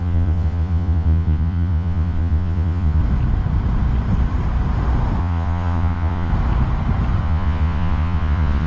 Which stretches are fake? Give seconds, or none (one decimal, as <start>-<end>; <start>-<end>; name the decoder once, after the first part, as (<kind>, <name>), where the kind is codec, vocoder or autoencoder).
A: 0.0-3.0 (vocoder, Vocos); 5.2-6.3; 7.2-8.7